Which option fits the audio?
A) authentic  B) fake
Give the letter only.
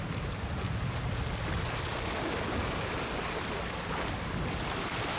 A